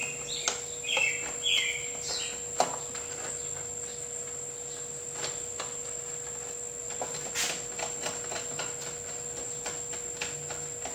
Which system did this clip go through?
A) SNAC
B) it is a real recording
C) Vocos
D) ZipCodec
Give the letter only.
B